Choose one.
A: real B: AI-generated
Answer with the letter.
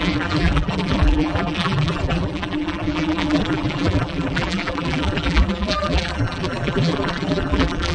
B